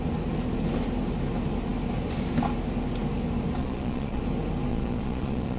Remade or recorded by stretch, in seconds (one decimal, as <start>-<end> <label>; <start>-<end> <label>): 0.0-3.6 recorded; 3.6-4.2 remade; 4.2-4.7 recorded; 4.7-5.6 remade